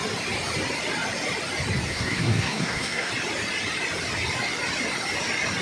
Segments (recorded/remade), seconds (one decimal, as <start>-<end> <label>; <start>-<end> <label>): 0.0-1.9 recorded; 1.9-3.1 remade; 3.1-5.6 recorded